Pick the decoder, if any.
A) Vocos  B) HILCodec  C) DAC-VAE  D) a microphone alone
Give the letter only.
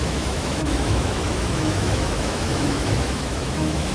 C